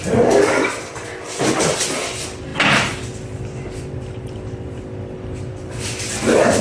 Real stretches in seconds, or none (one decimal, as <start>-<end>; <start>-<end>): 0.0-6.6